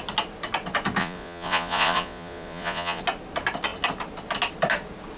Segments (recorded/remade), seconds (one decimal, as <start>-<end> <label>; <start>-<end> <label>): 0.0-1.0 recorded; 1.0-3.0 remade; 3.0-5.2 recorded